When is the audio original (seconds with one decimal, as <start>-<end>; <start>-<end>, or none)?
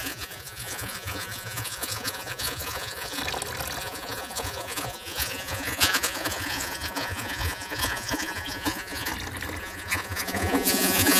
3.2-3.8; 9.1-9.6